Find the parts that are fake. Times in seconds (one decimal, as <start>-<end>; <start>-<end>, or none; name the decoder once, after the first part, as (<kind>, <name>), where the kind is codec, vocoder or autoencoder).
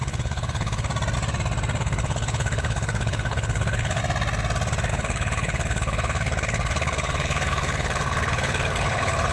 0.0-0.9 (codec, HILCodec); 1.8-4.0; 4.9-9.3